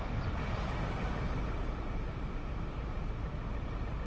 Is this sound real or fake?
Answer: real